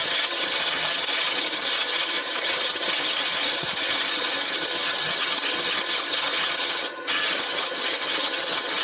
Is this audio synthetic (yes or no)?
yes